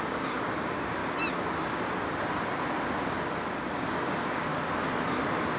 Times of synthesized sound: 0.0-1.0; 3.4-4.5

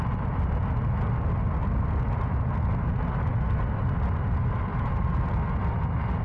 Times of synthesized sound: 4.7-5.3

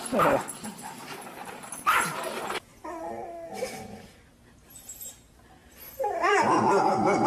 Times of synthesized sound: 5.6-7.3